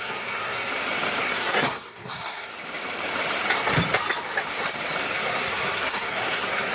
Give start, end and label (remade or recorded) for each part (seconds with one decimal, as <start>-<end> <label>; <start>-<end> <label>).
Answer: 0.0-0.7 remade; 0.7-1.2 recorded; 1.2-2.5 remade; 2.5-5.2 recorded; 5.2-6.7 remade